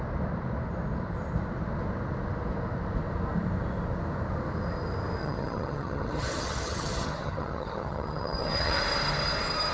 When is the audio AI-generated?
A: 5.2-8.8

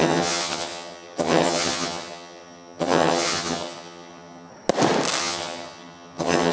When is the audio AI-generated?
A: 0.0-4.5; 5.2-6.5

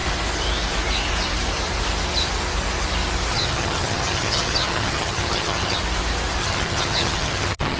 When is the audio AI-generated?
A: 3.3-5.8; 6.4-7.8

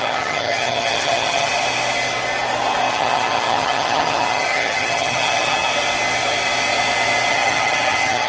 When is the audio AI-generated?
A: 0.0-1.5; 2.9-5.7; 7.3-8.3